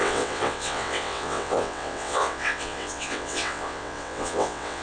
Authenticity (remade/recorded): remade